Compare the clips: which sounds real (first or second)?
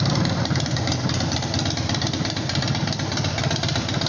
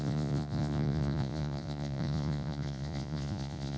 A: first